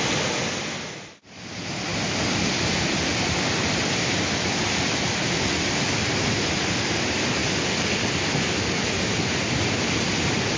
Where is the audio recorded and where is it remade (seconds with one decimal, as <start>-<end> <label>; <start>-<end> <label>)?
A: 0.0-10.6 recorded